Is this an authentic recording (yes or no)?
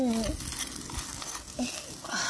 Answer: yes